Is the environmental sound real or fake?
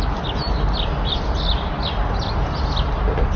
real